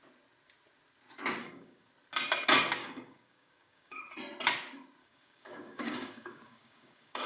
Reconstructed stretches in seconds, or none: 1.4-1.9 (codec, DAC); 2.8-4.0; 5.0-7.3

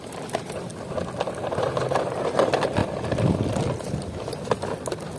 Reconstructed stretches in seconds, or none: 0.0-0.7 (vocoder, BigVGAN v2); 1.4-2.8

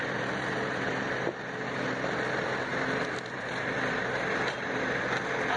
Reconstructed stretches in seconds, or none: none

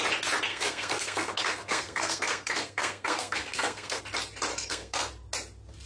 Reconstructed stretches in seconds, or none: 0.5-4.0 (codec, SNAC); 4.5-5.1

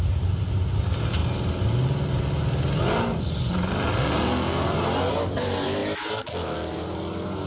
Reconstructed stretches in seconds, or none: none